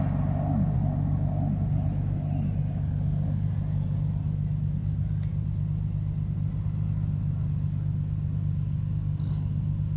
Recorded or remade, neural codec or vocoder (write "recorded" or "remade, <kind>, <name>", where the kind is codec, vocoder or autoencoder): recorded